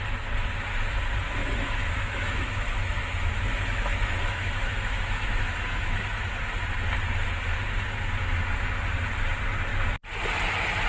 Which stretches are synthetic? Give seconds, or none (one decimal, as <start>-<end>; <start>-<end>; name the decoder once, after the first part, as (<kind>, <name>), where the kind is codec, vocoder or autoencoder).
1.4-6.3 (autoencoder, DAC-VAE)